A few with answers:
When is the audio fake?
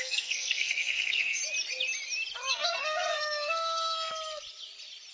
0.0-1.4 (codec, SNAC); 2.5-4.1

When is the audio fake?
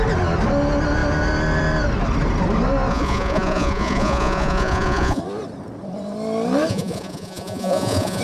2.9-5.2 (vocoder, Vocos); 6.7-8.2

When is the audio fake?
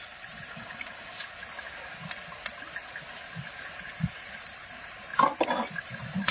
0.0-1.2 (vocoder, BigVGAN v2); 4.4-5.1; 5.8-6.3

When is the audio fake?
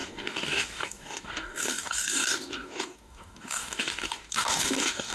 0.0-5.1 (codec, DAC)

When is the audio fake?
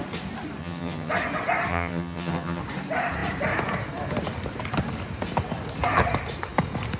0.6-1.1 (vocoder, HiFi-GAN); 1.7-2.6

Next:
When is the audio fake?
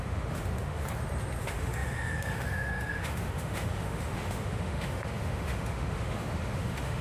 0.0-0.8 (autoencoder, DAC-VAE); 1.4-7.0